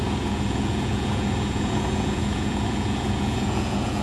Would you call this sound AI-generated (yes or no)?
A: yes